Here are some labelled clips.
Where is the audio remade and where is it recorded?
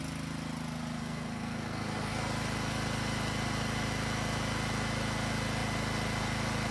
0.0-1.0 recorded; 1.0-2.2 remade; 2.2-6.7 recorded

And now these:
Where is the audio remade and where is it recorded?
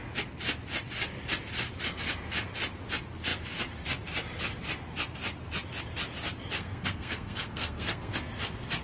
0.0-6.6 recorded; 6.6-8.3 remade; 8.3-8.8 recorded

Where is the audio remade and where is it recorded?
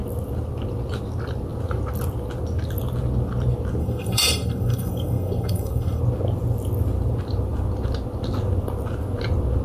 0.0-3.8 recorded; 3.8-6.0 remade; 6.0-9.6 recorded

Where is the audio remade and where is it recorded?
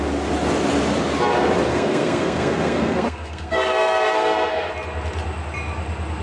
0.0-1.7 recorded; 1.7-4.7 remade; 4.7-6.2 recorded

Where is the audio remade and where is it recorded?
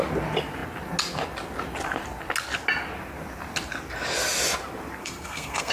0.0-5.0 recorded; 5.0-5.7 remade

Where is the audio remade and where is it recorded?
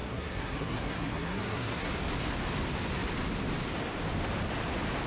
0.0-1.9 remade; 1.9-5.1 recorded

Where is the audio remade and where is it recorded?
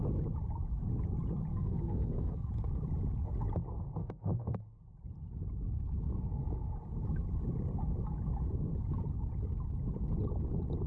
0.0-1.5 recorded; 1.5-2.5 remade; 2.5-4.0 recorded; 4.0-4.8 remade; 4.8-10.9 recorded